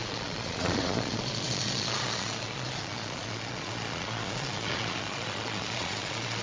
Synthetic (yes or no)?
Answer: yes